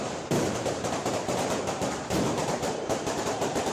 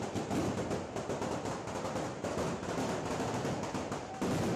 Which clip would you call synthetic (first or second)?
first